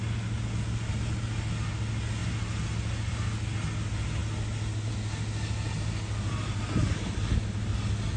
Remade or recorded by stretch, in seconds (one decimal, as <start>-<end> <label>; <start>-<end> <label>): 0.0-8.2 recorded